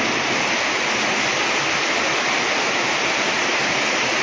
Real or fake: real